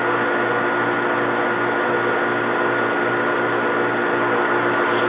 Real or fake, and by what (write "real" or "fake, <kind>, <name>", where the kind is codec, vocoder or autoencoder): real